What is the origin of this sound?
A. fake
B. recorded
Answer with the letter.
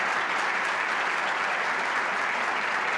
B